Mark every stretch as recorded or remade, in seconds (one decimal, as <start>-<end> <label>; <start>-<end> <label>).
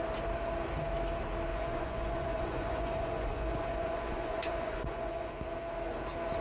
0.0-1.5 recorded; 1.5-5.3 remade; 5.3-6.4 recorded